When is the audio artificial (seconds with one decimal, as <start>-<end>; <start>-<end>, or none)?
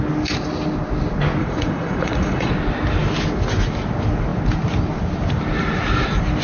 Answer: 1.4-2.5